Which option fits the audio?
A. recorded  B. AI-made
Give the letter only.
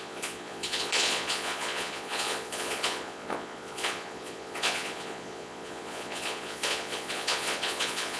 B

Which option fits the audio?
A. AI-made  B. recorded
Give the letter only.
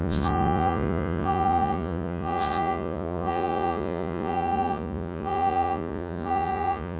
A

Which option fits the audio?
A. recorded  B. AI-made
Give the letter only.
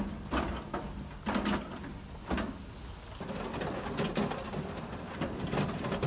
A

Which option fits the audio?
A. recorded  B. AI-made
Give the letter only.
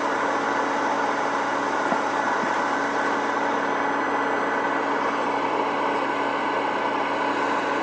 A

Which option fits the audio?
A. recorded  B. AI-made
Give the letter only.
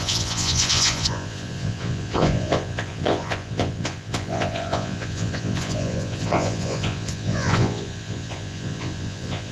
B